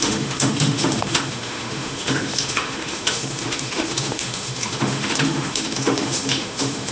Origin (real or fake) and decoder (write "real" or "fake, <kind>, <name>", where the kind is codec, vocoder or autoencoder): fake, autoencoder, DAC-VAE